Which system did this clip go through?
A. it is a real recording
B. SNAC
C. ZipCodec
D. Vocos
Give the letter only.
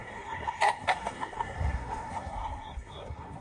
B